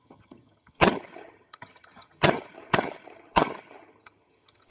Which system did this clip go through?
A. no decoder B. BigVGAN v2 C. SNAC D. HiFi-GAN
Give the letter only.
D